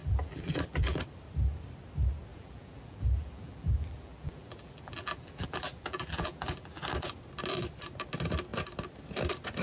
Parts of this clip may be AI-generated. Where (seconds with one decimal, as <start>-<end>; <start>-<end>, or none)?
0.0-1.0; 2.3-6.8